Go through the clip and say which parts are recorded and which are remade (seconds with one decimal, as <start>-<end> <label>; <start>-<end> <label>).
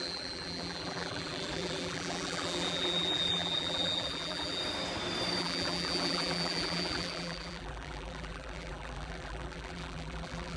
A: 0.0-4.6 remade; 4.6-5.4 recorded; 5.4-10.6 remade